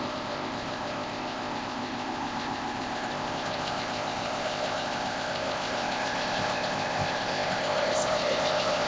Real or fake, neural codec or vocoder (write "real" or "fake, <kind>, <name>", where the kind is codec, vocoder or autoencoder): fake, codec, ZipCodec